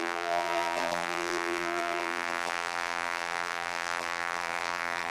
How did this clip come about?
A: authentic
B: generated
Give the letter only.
B